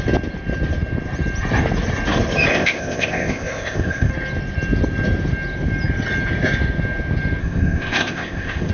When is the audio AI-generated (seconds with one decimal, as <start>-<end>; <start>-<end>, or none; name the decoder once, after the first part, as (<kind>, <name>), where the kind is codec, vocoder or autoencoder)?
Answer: 2.5-4.1 (codec, ZipCodec); 7.4-8.7